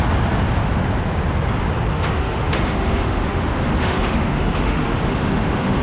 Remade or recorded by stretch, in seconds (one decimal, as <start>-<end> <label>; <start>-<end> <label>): 0.0-1.9 recorded; 1.9-5.8 remade